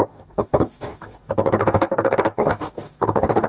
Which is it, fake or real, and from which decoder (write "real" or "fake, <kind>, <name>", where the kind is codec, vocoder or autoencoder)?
fake, codec, DAC